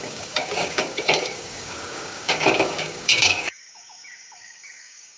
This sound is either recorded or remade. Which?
remade